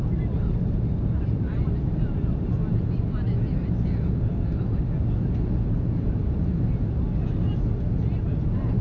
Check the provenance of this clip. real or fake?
real